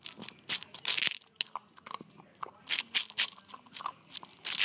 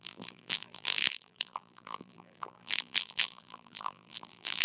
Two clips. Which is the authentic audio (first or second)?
first